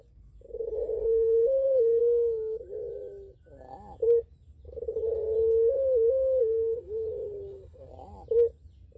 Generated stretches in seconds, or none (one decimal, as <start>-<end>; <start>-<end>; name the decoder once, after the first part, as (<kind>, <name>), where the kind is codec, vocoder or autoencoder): 1.0-2.0 (codec, HILCodec); 6.4-7.9